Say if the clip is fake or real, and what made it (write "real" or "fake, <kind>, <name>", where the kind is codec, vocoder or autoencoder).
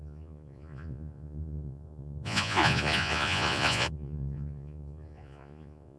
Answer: fake, vocoder, Vocos